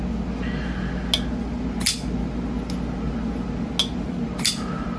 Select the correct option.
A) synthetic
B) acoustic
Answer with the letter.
B